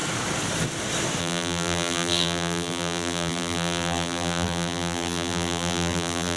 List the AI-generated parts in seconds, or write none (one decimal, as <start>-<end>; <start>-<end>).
1.2-6.4